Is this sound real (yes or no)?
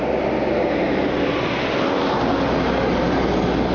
yes